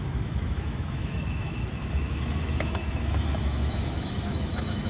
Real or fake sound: fake